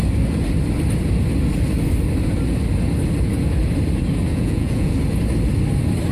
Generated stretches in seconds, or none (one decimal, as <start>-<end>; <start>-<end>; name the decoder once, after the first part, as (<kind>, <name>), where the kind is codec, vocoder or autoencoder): 4.3-4.9 (vocoder, Vocos)